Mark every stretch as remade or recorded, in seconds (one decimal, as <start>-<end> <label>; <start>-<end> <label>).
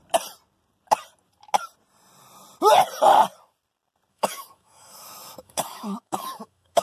0.0-4.1 recorded; 4.1-6.8 remade